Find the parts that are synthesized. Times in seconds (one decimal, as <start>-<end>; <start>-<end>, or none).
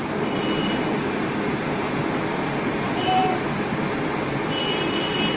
1.5-2.0